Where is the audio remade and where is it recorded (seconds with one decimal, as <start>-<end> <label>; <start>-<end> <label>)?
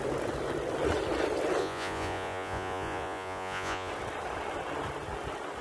0.0-1.6 recorded; 1.6-3.9 remade; 3.9-5.6 recorded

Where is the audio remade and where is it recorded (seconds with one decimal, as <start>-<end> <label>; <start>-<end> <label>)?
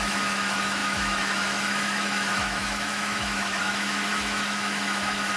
0.0-5.4 remade